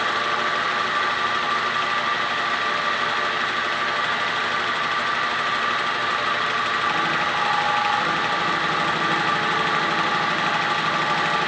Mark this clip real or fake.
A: real